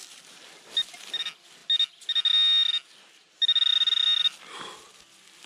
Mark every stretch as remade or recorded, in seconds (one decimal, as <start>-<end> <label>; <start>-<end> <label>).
0.0-5.5 recorded